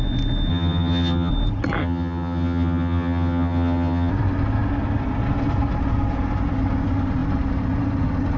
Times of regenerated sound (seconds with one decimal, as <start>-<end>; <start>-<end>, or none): 0.5-1.3; 1.8-4.1